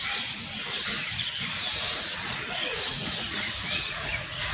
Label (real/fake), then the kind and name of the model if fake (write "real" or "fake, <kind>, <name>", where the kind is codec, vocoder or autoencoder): fake, vocoder, Vocos